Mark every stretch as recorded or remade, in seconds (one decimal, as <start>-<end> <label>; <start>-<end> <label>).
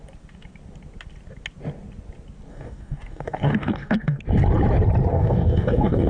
0.0-2.5 recorded; 2.5-4.2 remade; 4.2-5.1 recorded; 5.1-6.1 remade